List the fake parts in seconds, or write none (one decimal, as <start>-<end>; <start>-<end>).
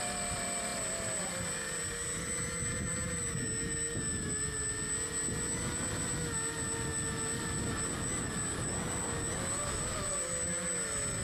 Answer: none